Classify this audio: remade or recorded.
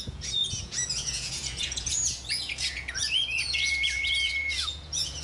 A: remade